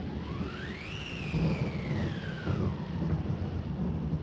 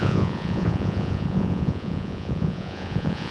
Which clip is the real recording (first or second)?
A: first